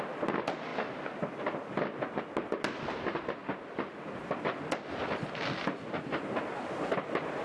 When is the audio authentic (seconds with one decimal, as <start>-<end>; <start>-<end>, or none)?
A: 0.0-7.4